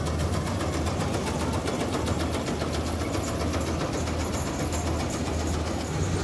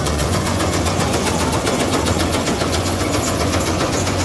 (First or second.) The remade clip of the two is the second